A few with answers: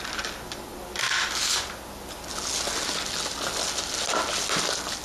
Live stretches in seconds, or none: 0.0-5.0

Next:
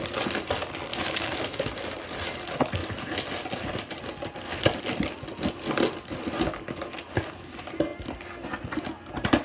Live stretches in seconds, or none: 0.0-0.9; 1.6-9.4

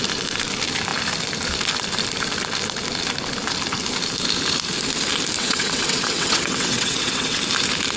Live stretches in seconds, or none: 0.0-5.4; 7.4-8.0

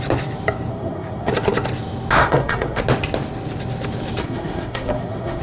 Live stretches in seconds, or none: 0.0-0.7; 1.3-2.2; 2.8-4.2

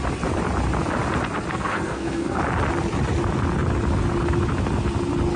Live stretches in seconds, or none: 0.0-1.5; 2.4-5.4

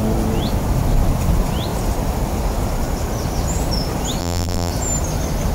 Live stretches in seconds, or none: 0.0-4.2; 4.7-5.5

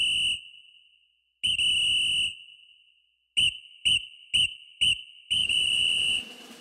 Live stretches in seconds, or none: 0.0-5.4